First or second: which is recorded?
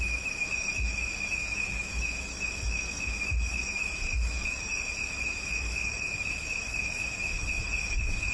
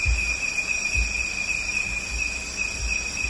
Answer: second